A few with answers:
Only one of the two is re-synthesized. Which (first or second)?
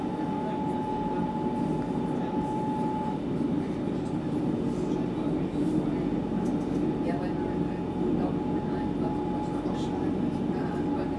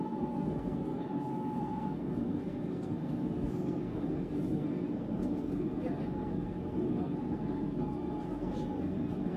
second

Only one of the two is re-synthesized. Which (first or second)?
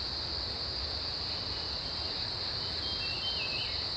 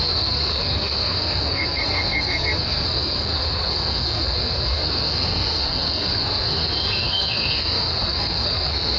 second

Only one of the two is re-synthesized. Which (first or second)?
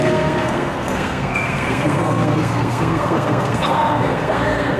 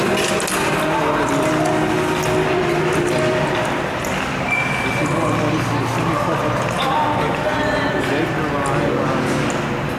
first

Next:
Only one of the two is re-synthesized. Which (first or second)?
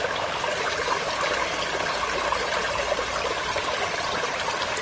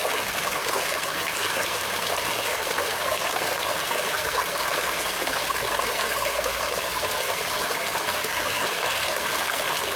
second